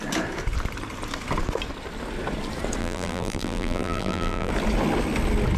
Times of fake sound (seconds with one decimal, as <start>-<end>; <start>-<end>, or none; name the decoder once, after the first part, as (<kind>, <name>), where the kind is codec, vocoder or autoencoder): 2.8-4.5 (vocoder, BigVGAN v2)